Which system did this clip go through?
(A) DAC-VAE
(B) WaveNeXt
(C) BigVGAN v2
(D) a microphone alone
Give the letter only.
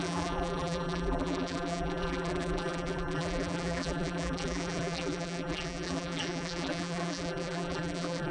C